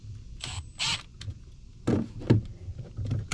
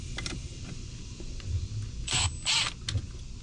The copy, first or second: first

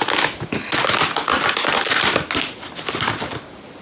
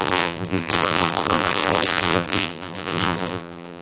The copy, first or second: second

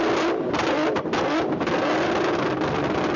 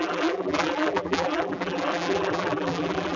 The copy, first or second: second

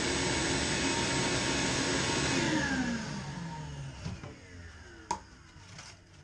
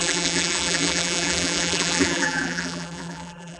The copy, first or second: second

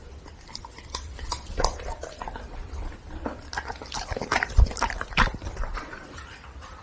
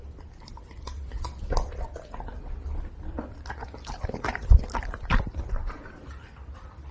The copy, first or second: first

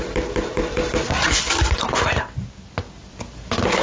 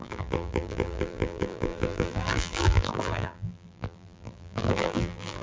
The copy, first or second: second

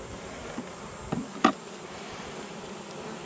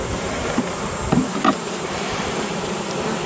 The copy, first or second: second